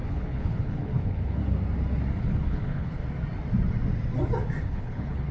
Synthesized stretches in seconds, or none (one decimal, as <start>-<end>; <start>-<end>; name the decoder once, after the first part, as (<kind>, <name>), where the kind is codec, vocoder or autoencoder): 0.0-1.4 (codec, HILCodec); 2.2-3.0; 4.6-5.3